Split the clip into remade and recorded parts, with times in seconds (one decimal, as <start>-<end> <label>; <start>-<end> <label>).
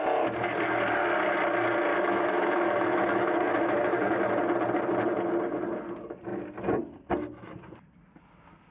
0.0-1.9 recorded; 1.9-4.3 remade; 4.3-8.7 recorded